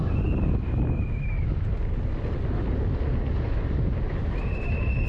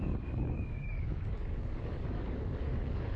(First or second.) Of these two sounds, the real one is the first